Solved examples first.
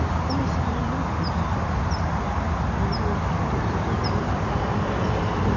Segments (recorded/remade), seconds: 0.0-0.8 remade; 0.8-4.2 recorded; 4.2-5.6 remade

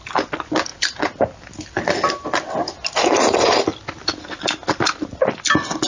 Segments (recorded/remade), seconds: 0.0-0.7 recorded; 0.7-3.2 remade; 3.2-5.9 recorded

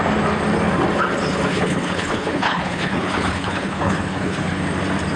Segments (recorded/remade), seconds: 0.0-1.5 recorded; 1.5-4.6 remade; 4.6-5.2 recorded

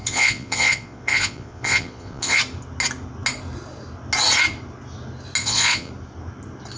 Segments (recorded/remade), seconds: 0.0-2.4 remade; 2.4-5.4 recorded; 5.4-5.9 remade; 5.9-6.8 recorded

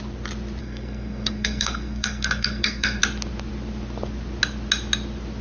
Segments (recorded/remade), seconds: 0.0-0.6 recorded; 0.6-3.0 remade; 3.0-5.4 recorded

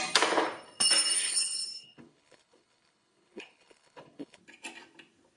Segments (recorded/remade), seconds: 0.0-1.2 recorded; 1.2-4.4 remade; 4.4-5.4 recorded

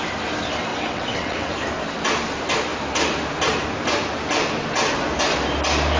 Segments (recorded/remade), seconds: 0.0-0.7 recorded; 0.7-1.5 remade; 1.5-6.0 recorded